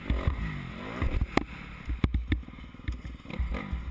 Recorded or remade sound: recorded